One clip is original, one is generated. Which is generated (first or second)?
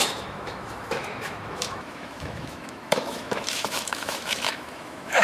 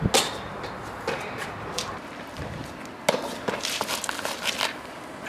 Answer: first